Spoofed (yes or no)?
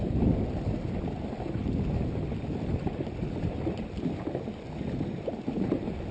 no